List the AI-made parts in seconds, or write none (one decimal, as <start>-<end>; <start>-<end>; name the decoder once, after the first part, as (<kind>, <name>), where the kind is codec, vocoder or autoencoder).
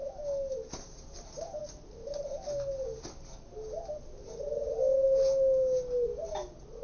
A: none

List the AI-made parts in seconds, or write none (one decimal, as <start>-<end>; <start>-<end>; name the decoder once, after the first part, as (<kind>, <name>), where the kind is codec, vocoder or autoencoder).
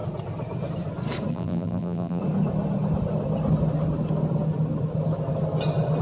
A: 1.3-2.2 (vocoder, BigVGAN v2)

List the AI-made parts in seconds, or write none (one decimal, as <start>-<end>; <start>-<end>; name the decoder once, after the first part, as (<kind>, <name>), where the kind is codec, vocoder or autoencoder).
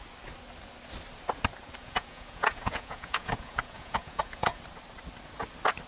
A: 1.8-4.6 (vocoder, Vocos)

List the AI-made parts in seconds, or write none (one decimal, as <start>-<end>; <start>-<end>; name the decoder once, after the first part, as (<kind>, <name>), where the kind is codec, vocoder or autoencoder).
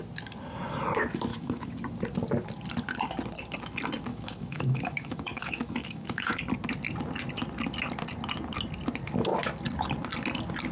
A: 1.3-1.8 (autoencoder, DAC-VAE); 4.1-6.4